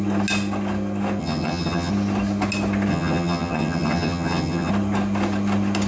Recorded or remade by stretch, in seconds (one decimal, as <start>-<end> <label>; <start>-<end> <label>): 0.0-1.2 recorded; 1.2-1.9 remade; 1.9-2.9 recorded; 2.9-4.7 remade; 4.7-5.9 recorded